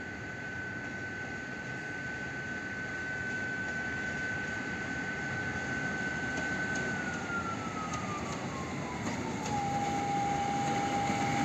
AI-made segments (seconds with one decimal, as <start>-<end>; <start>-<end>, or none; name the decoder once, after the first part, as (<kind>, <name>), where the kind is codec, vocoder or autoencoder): 3.0-4.3 (autoencoder, DAC-VAE)